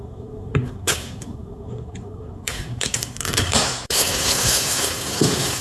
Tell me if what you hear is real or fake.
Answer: fake